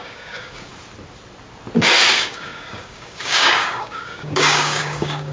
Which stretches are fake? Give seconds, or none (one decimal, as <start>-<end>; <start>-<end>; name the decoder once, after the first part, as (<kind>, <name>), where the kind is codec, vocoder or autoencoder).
0.0-0.7 (codec, DAC); 2.1-5.3